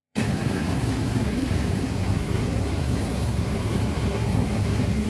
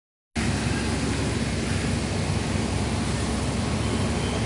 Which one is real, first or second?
second